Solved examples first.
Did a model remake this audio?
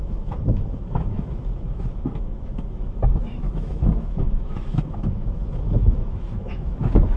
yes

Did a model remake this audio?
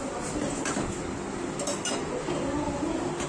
no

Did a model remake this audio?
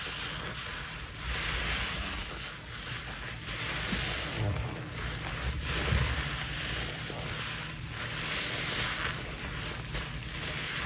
no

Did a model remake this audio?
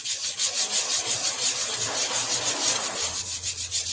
no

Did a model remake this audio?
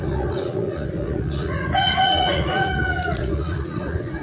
yes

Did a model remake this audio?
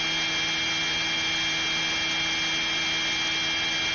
no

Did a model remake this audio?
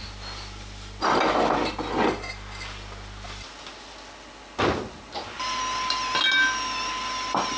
no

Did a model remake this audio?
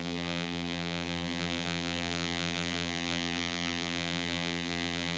yes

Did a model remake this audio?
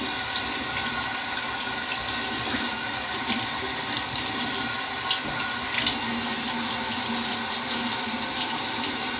no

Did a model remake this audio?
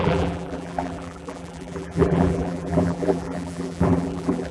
yes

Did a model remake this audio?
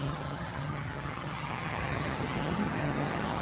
yes